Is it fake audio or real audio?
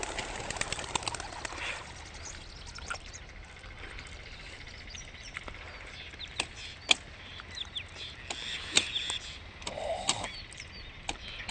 real